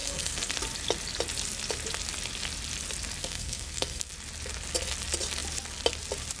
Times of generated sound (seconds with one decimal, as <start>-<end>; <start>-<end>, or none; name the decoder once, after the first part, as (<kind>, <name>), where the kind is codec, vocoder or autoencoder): 0.0-0.5 (codec, SNAC); 3.2-4.1